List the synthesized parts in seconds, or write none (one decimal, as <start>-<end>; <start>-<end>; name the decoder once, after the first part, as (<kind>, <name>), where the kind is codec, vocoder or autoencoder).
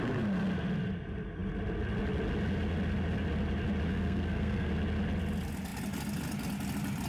3.9-4.7 (codec, SNAC)